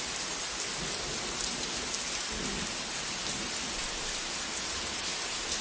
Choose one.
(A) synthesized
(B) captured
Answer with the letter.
B